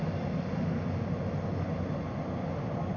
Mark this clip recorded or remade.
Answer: recorded